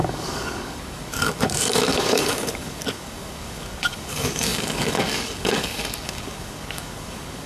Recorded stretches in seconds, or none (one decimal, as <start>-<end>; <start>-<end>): none